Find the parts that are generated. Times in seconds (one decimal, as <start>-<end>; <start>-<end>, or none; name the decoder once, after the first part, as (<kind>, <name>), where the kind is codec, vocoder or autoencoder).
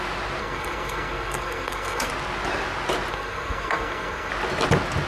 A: 0.4-2.1 (codec, SNAC); 3.1-4.3